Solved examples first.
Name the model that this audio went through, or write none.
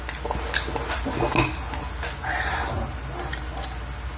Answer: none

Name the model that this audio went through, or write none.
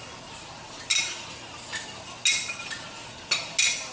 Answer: none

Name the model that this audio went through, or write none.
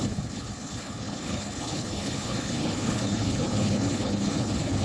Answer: codec, HILCodec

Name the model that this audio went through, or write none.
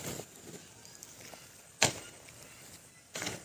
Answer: none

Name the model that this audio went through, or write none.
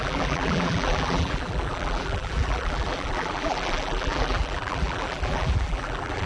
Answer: vocoder, BigVGAN v2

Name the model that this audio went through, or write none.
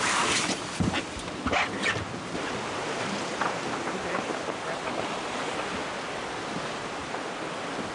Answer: none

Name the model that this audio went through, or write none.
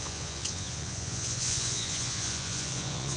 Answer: vocoder, Vocos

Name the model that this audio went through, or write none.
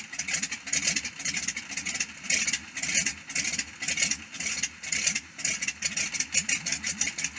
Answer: none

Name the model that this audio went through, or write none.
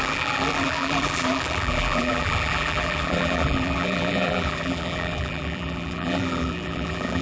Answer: vocoder, BigVGAN v2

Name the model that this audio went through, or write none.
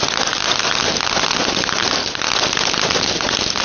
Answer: none